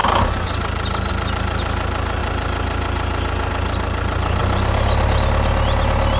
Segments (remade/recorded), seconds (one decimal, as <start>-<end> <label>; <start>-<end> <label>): 0.0-6.2 recorded